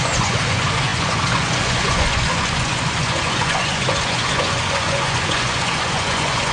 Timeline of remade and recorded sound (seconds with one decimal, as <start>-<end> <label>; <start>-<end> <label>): 0.0-6.5 remade